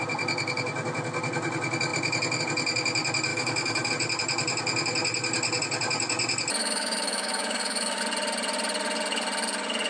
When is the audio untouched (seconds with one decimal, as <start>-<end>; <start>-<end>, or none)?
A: 0.0-3.3; 3.9-6.6; 8.0-9.9